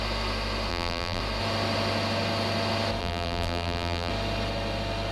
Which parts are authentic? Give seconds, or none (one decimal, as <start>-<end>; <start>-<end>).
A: 0.0-0.7; 1.2-3.0; 4.1-5.1